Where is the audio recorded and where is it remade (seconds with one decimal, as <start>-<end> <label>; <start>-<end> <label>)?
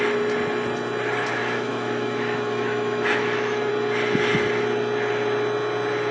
0.0-1.4 recorded; 1.4-3.7 remade; 3.7-6.1 recorded